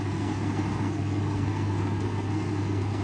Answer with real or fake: fake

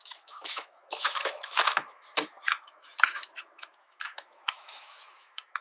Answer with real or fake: fake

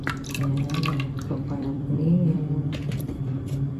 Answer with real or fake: fake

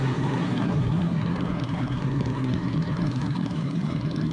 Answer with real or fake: fake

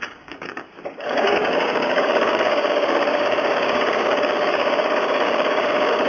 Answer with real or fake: fake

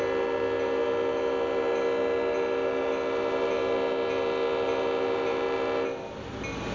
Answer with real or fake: real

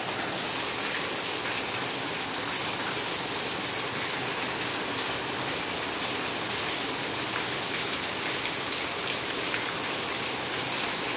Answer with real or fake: real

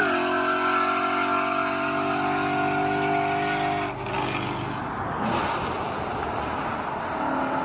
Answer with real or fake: real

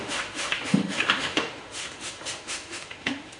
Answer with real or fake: fake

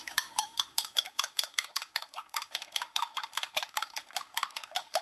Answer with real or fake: fake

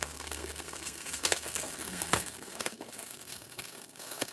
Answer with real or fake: fake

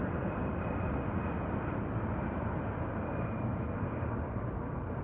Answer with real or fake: fake